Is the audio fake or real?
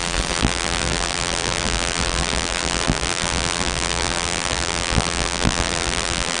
fake